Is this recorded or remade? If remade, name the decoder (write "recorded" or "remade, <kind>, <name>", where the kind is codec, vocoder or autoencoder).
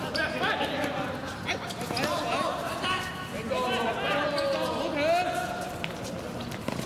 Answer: recorded